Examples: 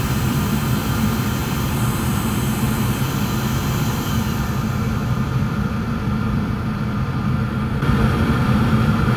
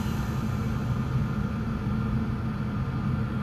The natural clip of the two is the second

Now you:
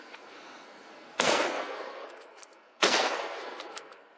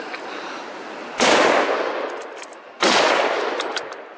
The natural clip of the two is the second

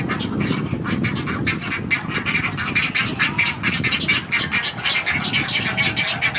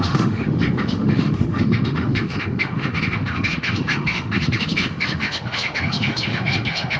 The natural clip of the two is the first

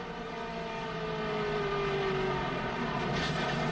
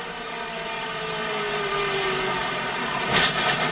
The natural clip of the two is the first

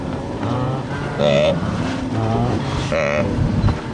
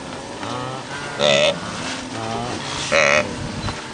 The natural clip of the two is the second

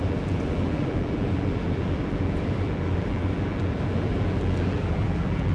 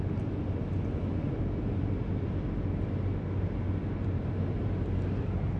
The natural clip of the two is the second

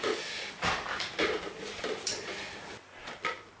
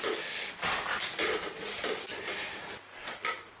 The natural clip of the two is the second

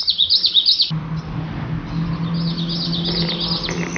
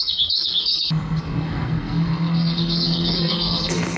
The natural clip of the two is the first